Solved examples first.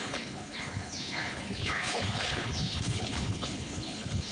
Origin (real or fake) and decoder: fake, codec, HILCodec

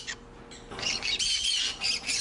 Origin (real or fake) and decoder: real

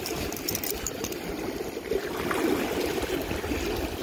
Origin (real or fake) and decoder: fake, vocoder, BigVGAN v2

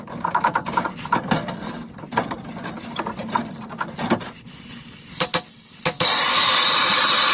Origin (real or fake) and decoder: real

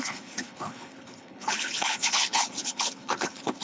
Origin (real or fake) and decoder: fake, codec, HILCodec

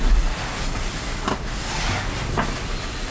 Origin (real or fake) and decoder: real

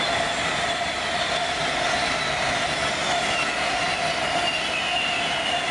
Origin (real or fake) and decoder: real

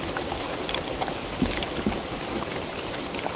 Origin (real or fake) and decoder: fake, vocoder, BigVGAN v2